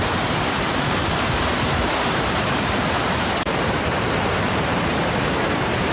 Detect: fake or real fake